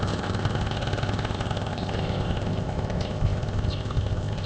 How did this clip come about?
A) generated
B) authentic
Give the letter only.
A